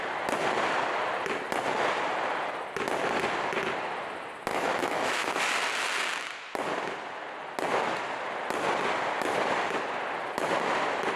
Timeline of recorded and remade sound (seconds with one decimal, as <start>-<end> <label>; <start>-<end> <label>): 0.0-4.5 recorded; 4.5-5.4 remade; 5.4-11.2 recorded

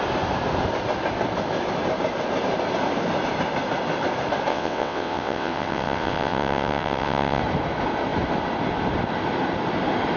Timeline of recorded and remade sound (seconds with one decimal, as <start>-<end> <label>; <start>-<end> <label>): 0.0-4.5 recorded; 4.5-7.4 remade; 7.4-10.2 recorded

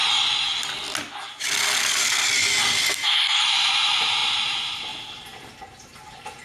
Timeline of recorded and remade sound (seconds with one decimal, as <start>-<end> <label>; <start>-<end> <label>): 0.0-3.4 recorded; 3.4-4.2 remade; 4.2-4.7 recorded; 4.7-6.4 remade

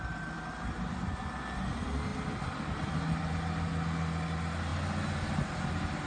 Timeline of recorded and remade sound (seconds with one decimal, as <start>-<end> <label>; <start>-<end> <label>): 0.0-6.1 recorded

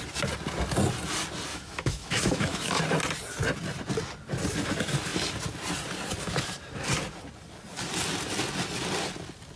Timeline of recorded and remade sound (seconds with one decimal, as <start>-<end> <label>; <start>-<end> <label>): 0.0-1.5 recorded; 1.5-2.8 remade; 2.8-9.6 recorded

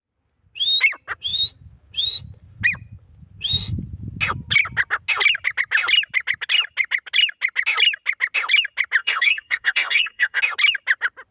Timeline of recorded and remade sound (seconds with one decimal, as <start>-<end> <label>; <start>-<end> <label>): 0.0-9.0 recorded; 9.0-10.4 remade; 10.4-11.3 recorded